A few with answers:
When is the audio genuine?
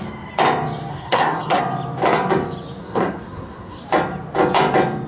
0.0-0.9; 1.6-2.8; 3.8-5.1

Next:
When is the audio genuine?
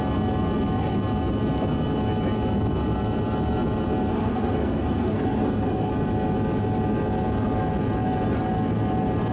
0.0-4.1; 5.9-9.3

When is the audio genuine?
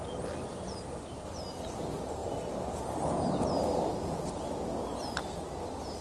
0.0-6.0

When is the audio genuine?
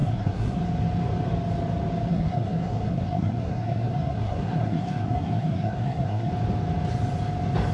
0.6-2.1; 6.3-7.7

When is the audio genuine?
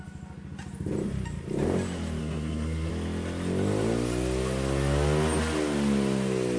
0.0-2.2; 2.9-6.6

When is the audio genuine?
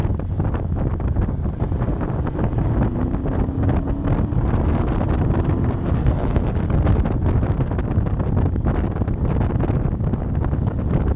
0.0-6.0; 6.5-11.2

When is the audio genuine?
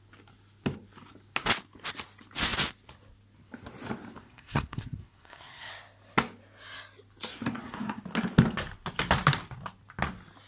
0.0-4.2; 5.7-7.3; 8.0-10.5